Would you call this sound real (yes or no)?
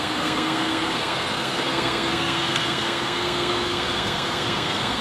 no